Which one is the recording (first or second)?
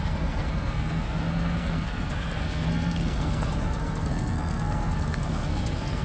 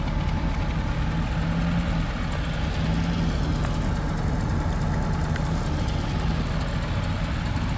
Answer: second